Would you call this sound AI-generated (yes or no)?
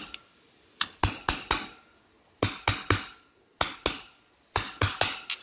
no